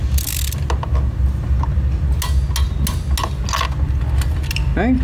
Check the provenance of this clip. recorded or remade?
recorded